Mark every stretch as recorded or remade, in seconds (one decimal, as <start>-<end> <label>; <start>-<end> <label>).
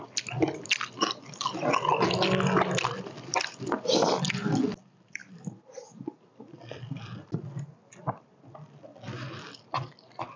0.0-5.2 recorded; 5.2-7.0 remade; 7.0-10.4 recorded